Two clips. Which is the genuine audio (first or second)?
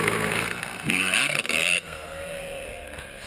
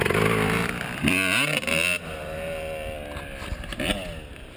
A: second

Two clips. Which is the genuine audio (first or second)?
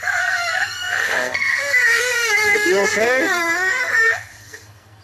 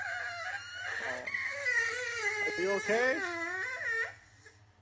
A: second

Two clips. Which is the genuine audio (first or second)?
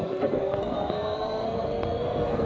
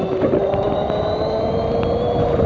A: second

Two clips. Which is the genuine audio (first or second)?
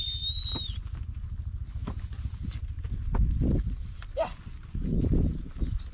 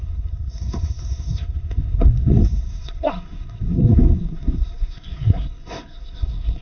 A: first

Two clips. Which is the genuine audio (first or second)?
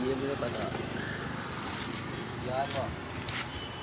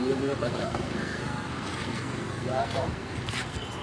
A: first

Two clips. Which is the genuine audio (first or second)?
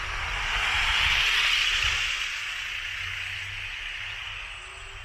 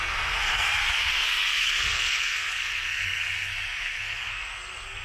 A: first